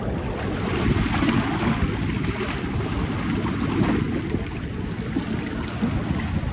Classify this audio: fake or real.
real